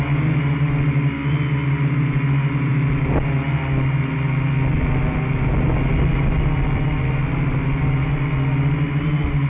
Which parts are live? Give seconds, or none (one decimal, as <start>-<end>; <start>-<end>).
0.0-9.5